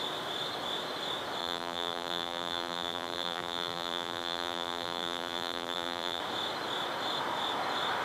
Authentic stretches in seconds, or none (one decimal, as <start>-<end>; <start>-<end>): 0.0-1.4; 6.2-8.0